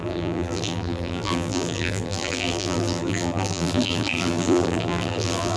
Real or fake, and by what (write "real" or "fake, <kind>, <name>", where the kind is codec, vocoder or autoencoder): fake, vocoder, BigVGAN v2